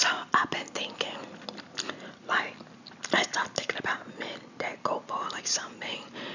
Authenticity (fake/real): real